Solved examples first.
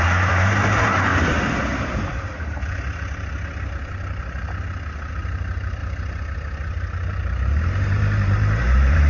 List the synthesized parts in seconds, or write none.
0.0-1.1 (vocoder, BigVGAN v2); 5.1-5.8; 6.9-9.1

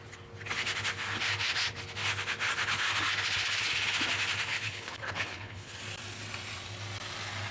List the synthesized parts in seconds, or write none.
4.5-5.8 (codec, HILCodec)

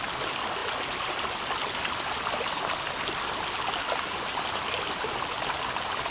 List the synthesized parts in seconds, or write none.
none